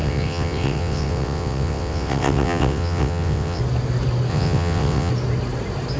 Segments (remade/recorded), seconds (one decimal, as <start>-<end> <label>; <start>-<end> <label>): 0.0-3.6 remade; 3.6-4.3 recorded; 4.3-5.1 remade; 5.1-6.0 recorded